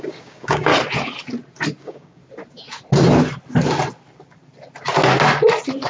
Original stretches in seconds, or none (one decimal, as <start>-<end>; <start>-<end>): 0.7-1.8; 2.2-5.9